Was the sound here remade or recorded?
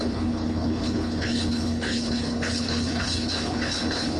remade